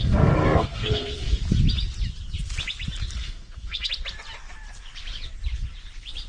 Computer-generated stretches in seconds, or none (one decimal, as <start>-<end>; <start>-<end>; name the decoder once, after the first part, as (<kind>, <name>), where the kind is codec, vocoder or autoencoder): 0.0-1.4 (codec, SNAC); 3.2-3.9